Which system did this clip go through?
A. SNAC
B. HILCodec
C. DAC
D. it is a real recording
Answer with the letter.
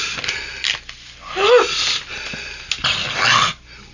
D